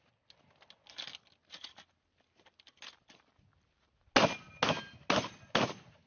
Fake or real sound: real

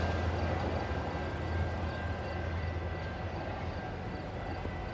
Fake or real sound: real